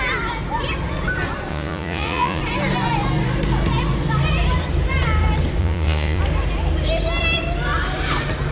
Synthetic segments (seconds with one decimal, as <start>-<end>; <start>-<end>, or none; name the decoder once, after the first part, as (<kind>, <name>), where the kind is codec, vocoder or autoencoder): 1.5-2.4 (vocoder, Vocos); 5.6-6.2